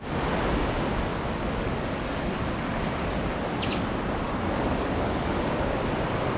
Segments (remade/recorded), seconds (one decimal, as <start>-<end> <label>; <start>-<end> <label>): 0.0-1.1 recorded; 1.1-3.1 remade; 3.1-4.2 recorded; 4.2-5.3 remade; 5.3-6.4 recorded